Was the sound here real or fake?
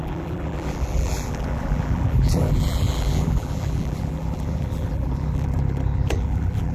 fake